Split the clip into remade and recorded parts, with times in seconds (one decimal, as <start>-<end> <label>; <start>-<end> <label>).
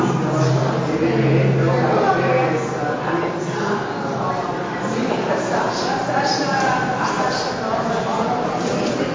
0.0-0.6 remade; 0.6-5.3 recorded; 5.3-6.9 remade; 6.9-7.9 recorded; 7.9-9.1 remade